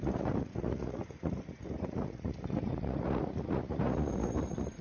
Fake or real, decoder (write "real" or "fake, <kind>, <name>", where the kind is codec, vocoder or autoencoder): fake, vocoder, Vocos